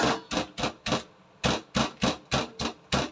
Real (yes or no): yes